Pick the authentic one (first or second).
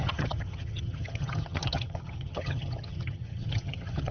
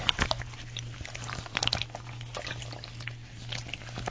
second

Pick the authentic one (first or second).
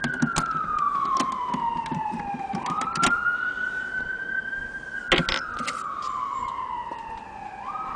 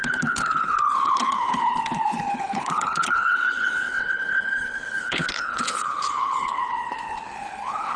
first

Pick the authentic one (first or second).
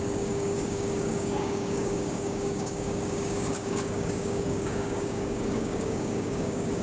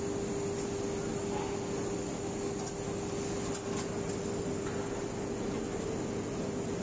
second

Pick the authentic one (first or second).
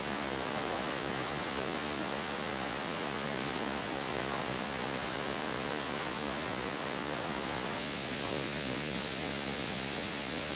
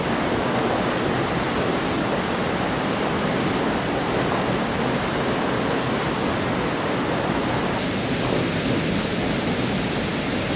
second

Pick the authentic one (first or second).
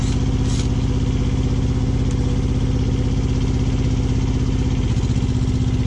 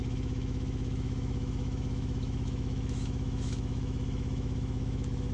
first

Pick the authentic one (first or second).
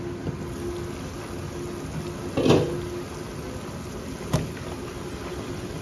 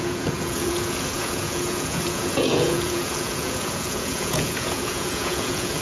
first